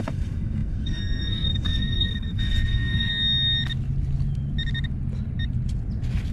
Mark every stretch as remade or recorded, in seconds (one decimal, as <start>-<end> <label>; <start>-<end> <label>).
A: 0.0-3.1 remade; 3.1-6.3 recorded